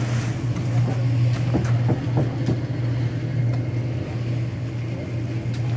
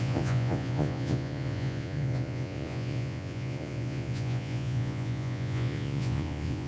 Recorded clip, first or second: first